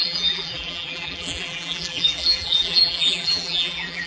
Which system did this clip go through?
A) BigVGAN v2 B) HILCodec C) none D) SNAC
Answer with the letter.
A